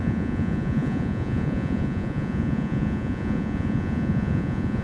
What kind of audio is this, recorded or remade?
remade